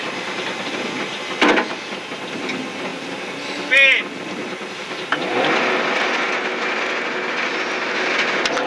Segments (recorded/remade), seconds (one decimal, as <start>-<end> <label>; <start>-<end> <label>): 0.0-8.7 recorded